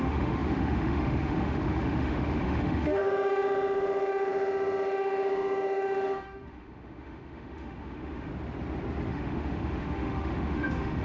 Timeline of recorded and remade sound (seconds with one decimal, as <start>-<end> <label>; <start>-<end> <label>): 0.0-8.3 remade; 8.3-9.1 recorded; 9.1-11.0 remade